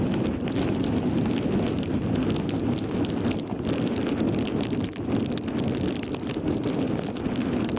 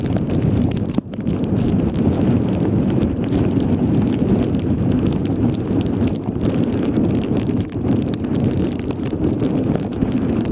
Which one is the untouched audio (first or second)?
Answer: first